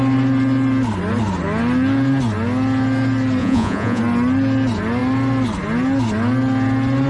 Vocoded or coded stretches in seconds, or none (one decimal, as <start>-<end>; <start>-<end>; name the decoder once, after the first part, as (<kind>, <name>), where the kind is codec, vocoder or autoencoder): 3.4-4.0 (vocoder, Vocos)